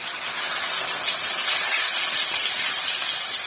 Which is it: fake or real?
real